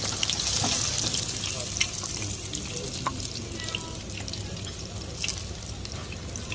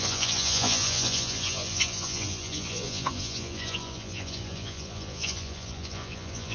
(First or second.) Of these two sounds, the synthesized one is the second